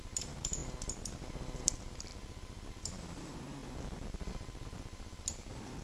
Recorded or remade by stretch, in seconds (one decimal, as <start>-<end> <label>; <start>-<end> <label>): 0.0-0.6 remade; 0.6-1.6 recorded; 1.6-2.1 remade; 2.1-3.0 recorded; 3.0-5.8 remade